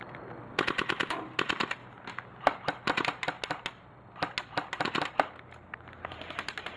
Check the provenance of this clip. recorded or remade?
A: recorded